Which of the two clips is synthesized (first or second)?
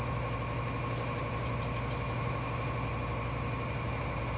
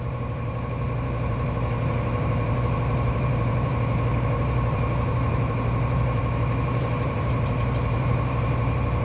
second